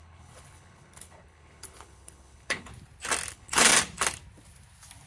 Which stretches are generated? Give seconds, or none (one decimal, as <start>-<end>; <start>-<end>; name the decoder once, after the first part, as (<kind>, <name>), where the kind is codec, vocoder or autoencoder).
0.0-2.7 (codec, HILCodec); 3.3-3.7

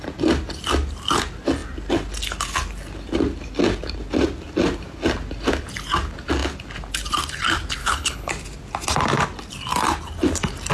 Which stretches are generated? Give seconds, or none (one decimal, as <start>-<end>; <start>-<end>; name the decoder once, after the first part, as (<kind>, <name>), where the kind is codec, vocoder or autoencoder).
7.8-8.3 (codec, HILCodec)

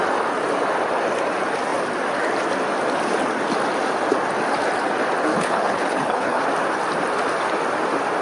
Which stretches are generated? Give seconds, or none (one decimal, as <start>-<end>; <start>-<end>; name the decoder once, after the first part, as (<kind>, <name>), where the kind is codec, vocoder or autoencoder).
5.3-6.4 (codec, HILCodec)